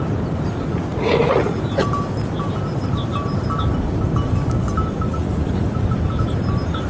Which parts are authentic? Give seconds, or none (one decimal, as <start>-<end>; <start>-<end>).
0.0-0.9; 1.6-5.1; 5.6-6.9